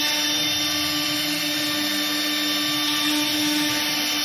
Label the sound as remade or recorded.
recorded